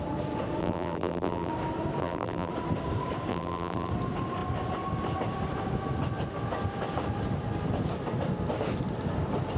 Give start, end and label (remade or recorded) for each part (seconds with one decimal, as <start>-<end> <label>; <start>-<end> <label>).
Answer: 0.0-0.6 recorded; 0.6-1.5 remade; 1.5-2.0 recorded; 2.0-2.5 remade; 2.5-3.3 recorded; 3.3-3.9 remade; 3.9-9.6 recorded